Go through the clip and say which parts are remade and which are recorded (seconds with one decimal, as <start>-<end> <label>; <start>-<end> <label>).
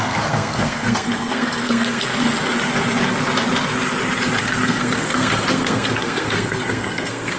0.0-2.1 remade; 2.1-4.4 recorded; 4.4-7.4 remade